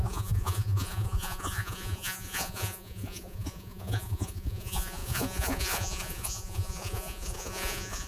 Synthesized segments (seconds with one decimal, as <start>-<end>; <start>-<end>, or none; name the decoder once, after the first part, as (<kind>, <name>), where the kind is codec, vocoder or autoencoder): 0.0-8.1 (vocoder, Vocos)